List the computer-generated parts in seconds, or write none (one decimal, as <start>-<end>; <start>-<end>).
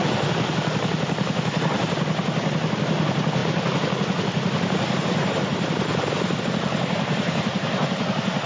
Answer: none